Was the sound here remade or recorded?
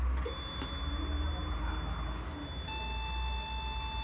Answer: recorded